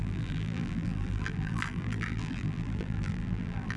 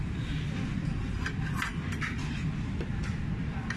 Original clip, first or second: second